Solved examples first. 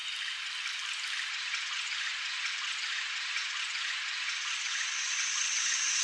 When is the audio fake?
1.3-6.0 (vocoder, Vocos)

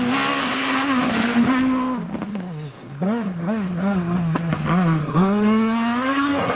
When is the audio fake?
0.4-1.1 (codec, SNAC); 2.3-4.5; 5.0-6.6

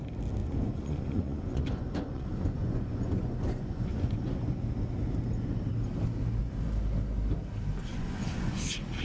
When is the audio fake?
0.4-4.1 (vocoder, Vocos); 7.9-8.6

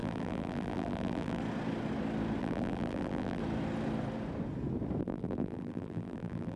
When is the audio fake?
0.0-1.4 (vocoder, BigVGAN v2); 2.4-3.4; 5.0-6.6